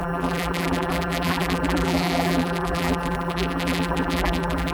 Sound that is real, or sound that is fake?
fake